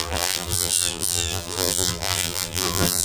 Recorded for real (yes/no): no